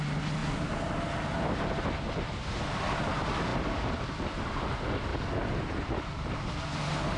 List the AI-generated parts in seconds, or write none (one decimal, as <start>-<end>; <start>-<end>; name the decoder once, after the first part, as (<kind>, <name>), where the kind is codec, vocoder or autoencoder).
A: none